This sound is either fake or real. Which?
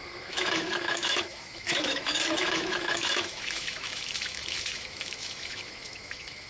fake